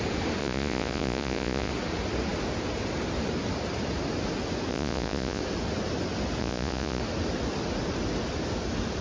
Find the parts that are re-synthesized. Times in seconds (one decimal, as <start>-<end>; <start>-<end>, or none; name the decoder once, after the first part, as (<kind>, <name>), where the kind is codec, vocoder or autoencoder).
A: 0.4-1.7 (vocoder, Vocos); 4.7-5.4; 6.4-7.0